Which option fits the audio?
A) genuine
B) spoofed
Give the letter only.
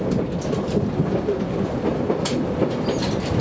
B